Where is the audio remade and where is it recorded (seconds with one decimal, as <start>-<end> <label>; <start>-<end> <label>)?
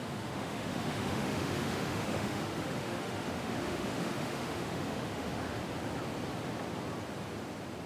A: 0.0-5.6 remade; 5.6-7.9 recorded